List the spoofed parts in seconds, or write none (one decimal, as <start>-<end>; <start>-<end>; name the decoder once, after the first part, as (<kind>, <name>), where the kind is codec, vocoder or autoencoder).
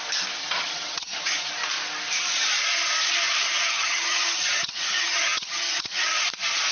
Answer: 0.4-1.5 (vocoder, HiFi-GAN); 3.6-6.2